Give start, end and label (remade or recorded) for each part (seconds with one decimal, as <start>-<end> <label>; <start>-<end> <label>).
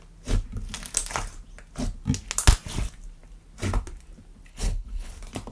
0.0-4.5 recorded; 4.5-5.1 remade; 5.1-5.5 recorded